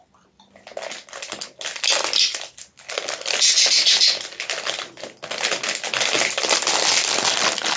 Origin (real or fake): real